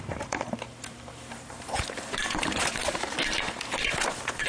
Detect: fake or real fake